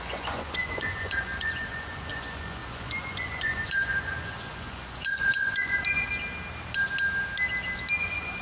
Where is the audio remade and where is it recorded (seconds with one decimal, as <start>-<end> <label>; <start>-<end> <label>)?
0.0-6.1 remade; 6.1-8.0 recorded; 8.0-8.4 remade